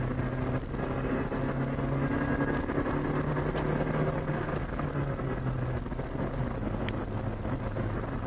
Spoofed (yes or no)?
no